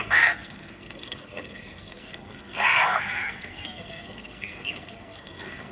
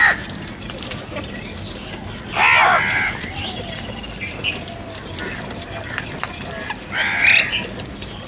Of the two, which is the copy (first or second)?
first